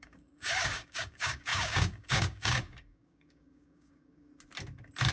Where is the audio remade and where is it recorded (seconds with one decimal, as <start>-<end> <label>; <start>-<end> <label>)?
0.0-4.3 remade; 4.3-5.1 recorded